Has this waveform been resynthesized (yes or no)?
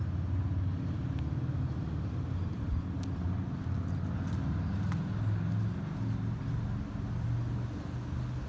no